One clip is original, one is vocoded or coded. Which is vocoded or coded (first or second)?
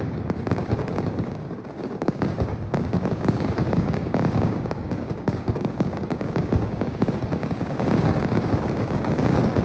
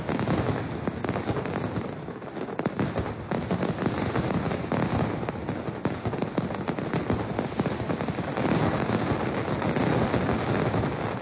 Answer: first